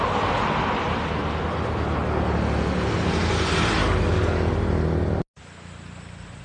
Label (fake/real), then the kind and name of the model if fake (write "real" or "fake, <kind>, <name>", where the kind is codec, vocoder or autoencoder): real